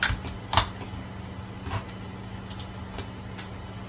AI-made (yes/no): no